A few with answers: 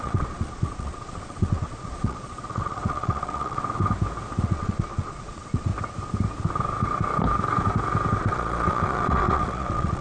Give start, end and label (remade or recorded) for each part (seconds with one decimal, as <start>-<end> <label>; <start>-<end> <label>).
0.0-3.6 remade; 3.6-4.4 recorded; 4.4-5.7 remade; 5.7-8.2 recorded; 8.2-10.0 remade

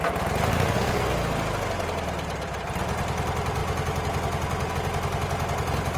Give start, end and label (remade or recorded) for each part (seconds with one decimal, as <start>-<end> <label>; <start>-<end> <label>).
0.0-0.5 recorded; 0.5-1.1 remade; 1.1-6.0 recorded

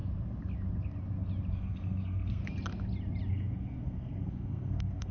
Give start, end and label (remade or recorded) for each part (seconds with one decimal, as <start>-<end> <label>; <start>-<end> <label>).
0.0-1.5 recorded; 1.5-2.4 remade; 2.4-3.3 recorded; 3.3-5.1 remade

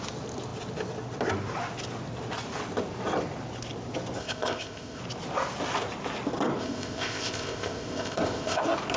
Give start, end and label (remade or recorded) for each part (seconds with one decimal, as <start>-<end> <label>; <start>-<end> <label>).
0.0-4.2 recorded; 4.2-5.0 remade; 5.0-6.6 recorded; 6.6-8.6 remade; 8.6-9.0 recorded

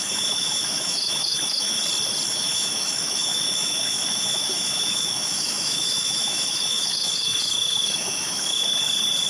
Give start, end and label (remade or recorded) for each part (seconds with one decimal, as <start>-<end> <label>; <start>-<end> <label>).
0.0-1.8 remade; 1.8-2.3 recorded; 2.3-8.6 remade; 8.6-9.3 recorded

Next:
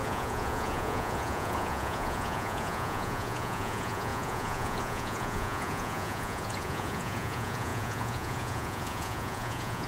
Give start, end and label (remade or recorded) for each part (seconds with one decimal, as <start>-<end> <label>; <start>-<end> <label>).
0.0-9.9 remade

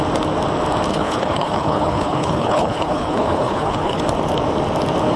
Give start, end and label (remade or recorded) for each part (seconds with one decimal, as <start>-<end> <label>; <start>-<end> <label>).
0.0-0.9 recorded; 0.9-4.0 remade; 4.0-5.2 recorded

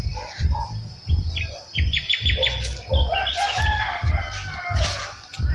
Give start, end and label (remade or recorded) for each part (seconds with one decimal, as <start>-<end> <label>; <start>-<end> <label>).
0.0-5.5 recorded